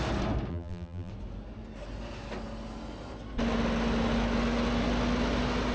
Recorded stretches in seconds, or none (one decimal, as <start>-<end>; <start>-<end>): 0.0-0.5; 1.1-5.7